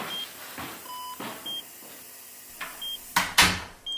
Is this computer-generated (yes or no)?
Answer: no